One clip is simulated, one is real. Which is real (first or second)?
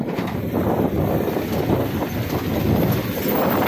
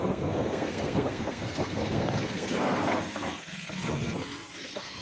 first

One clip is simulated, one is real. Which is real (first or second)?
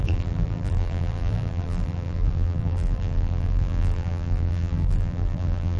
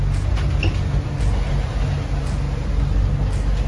second